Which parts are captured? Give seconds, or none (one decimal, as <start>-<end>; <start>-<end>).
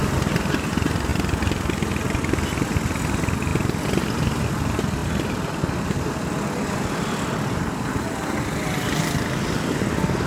0.0-10.3